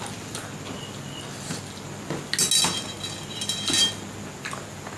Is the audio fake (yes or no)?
no